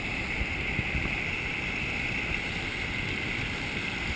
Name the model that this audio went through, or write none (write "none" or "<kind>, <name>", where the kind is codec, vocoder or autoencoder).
vocoder, BigVGAN v2